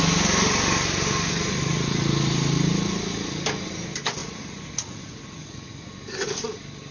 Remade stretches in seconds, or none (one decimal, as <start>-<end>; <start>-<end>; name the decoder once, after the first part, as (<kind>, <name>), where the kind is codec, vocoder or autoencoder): 4.2-5.9 (vocoder, Vocos)